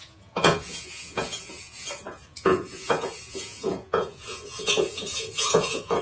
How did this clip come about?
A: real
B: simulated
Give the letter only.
B